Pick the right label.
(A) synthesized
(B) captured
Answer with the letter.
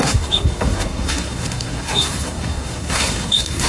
A